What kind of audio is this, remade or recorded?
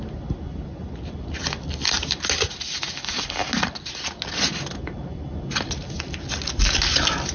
recorded